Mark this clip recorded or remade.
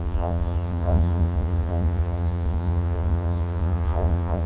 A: remade